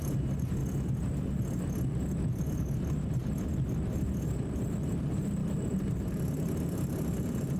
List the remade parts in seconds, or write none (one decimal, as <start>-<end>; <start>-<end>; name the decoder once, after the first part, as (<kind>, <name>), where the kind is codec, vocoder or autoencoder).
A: 0.0-0.6 (vocoder, BigVGAN v2); 4.4-7.6